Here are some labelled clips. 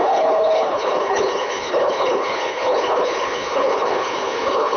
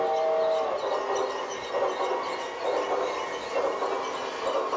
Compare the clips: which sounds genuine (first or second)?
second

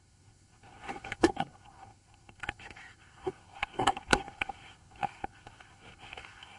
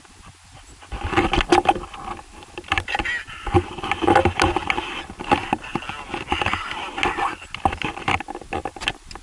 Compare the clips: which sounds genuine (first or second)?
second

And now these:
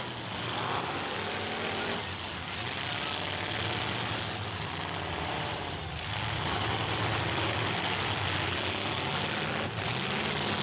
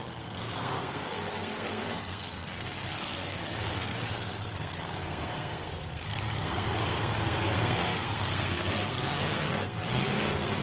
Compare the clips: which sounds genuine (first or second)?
first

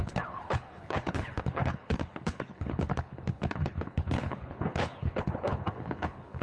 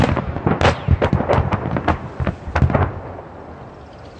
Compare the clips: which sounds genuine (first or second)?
second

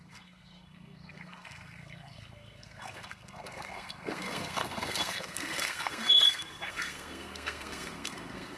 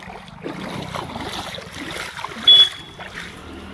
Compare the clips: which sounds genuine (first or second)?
second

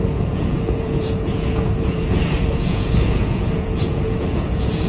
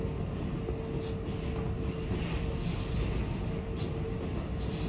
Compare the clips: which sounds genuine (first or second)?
second